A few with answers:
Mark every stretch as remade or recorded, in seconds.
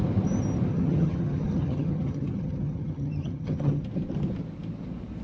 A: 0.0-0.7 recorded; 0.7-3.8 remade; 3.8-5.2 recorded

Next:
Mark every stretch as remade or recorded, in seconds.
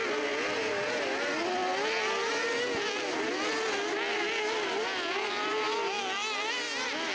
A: 0.0-7.1 recorded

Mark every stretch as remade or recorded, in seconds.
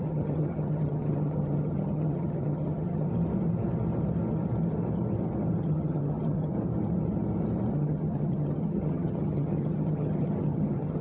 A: 0.0-3.1 remade; 3.1-5.6 recorded; 5.6-6.5 remade; 6.5-7.7 recorded; 7.7-11.0 remade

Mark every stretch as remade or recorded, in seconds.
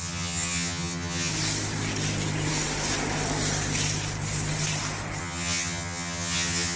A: 0.0-1.3 remade; 1.3-5.2 recorded; 5.2-6.8 remade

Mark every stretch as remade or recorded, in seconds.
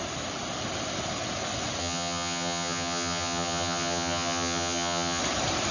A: 0.0-1.8 recorded; 1.8-5.2 remade; 5.2-5.7 recorded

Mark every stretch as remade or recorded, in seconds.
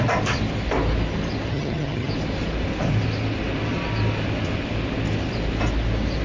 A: 0.0-1.5 recorded; 1.5-2.1 remade; 2.1-6.2 recorded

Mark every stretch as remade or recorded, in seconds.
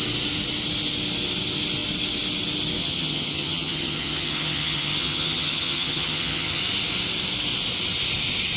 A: 0.0-2.8 recorded; 2.8-6.6 remade; 6.6-8.6 recorded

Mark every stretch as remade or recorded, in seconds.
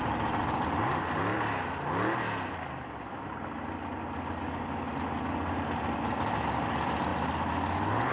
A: 0.0-8.1 recorded